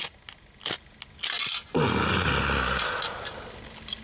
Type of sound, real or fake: real